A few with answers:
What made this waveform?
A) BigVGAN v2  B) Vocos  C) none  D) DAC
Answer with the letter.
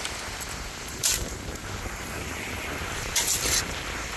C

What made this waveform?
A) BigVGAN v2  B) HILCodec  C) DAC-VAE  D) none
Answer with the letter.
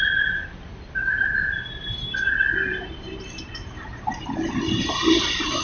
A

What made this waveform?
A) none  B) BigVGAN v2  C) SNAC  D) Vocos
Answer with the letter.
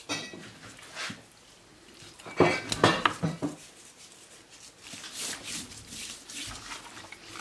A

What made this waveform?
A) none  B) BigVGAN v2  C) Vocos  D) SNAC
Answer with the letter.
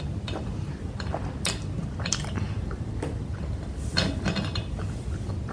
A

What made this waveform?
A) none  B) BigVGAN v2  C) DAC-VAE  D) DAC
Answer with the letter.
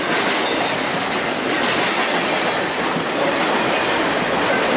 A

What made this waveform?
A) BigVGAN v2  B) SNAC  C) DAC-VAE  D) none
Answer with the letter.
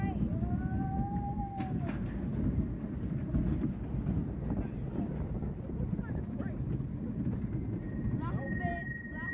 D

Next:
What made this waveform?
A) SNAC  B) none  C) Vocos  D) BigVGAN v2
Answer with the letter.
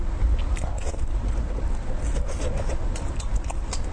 B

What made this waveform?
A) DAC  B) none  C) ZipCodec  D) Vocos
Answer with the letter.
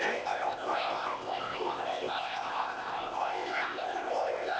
C